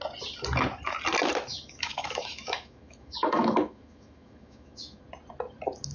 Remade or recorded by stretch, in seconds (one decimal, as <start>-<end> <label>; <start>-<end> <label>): 0.0-1.5 recorded; 1.5-5.0 remade; 5.0-5.9 recorded